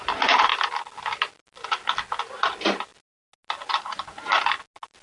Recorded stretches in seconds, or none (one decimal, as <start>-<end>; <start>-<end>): 0.0-5.0